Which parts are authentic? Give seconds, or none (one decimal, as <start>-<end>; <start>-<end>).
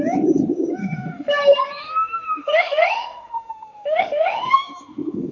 0.0-0.8; 1.3-1.8